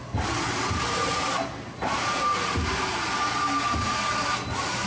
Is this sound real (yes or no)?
yes